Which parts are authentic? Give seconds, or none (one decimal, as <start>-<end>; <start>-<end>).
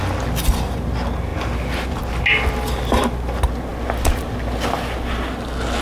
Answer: 0.0-5.8